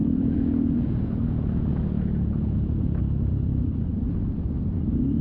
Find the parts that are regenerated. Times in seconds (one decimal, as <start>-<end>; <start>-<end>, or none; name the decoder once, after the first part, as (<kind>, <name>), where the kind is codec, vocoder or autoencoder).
0.0-3.0 (vocoder, Vocos)